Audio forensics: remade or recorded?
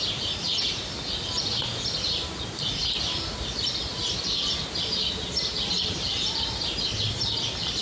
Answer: recorded